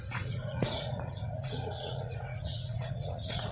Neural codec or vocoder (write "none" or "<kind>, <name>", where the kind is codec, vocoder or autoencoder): vocoder, Vocos